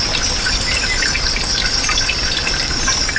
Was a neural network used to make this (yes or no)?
no